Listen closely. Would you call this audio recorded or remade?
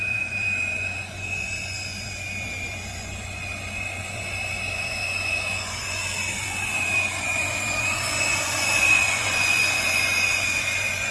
remade